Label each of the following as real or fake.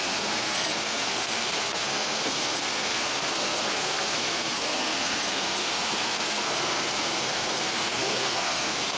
fake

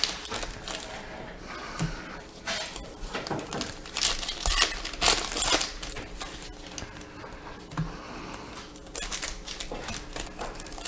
real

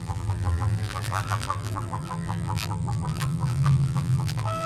fake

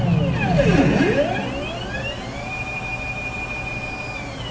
real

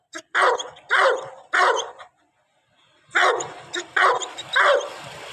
real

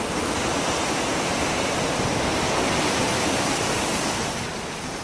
real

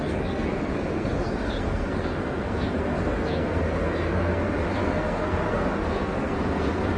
fake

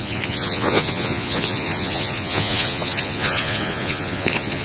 fake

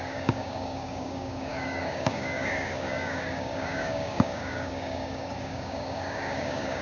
fake